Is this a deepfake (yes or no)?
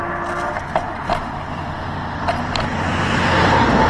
no